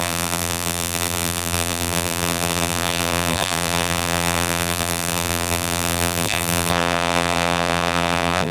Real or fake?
fake